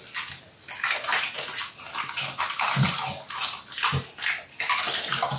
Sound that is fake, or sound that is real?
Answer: real